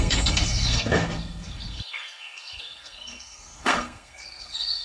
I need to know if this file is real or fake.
fake